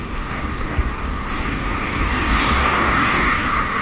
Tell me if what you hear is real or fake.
fake